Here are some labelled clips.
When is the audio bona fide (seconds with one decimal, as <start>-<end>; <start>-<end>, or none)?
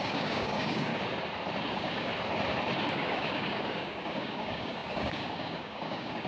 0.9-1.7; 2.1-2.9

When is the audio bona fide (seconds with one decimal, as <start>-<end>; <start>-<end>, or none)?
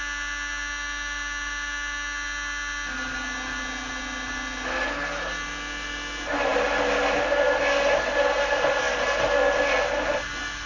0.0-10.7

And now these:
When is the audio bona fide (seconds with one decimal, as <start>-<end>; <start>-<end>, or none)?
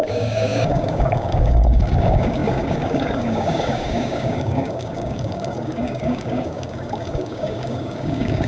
none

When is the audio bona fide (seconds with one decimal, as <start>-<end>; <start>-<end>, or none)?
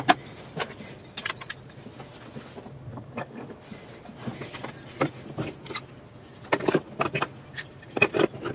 0.0-2.9; 3.5-8.5